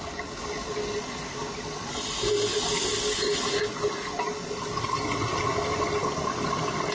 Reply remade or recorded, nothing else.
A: recorded